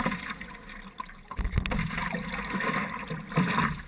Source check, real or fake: real